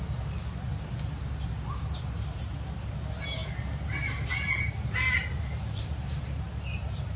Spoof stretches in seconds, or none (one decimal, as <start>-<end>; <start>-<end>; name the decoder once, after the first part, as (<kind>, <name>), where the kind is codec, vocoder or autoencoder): none